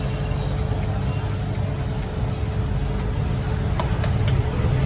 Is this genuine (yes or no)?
yes